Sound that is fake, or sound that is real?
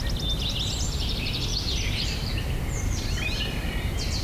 real